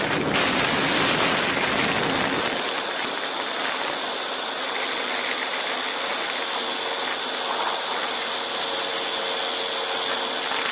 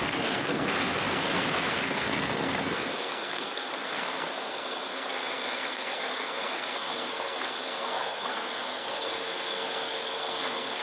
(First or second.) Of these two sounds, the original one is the first